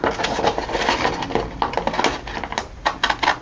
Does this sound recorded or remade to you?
recorded